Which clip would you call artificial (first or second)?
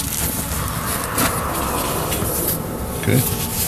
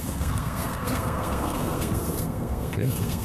second